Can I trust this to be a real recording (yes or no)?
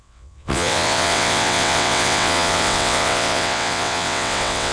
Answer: no